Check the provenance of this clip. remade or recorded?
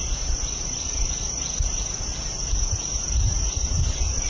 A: recorded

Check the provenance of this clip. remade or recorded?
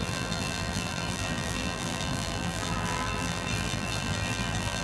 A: remade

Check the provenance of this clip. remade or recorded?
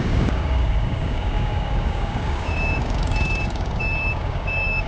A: remade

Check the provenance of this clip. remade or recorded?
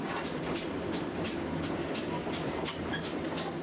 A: remade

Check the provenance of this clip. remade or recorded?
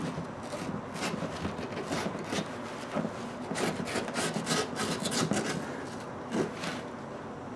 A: recorded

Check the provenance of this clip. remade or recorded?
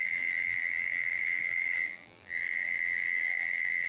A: remade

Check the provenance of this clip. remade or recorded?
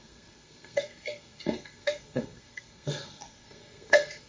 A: remade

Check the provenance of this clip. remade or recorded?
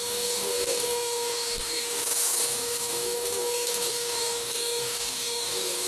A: remade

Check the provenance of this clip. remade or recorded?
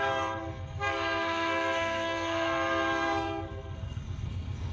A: remade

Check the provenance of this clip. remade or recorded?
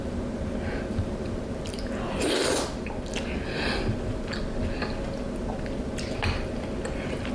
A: recorded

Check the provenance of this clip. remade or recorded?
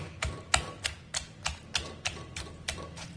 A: recorded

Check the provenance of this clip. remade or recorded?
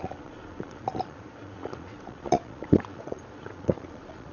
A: remade